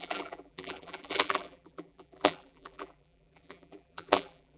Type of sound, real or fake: fake